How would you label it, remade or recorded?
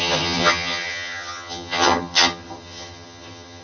remade